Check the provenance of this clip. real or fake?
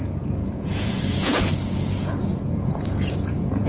fake